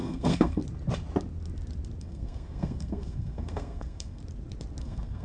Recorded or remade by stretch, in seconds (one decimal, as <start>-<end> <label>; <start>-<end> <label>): 0.0-0.6 remade; 0.6-2.0 recorded; 2.0-4.2 remade; 4.2-4.8 recorded; 4.8-5.2 remade